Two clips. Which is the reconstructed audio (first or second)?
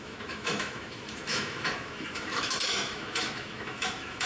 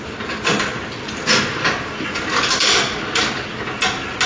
first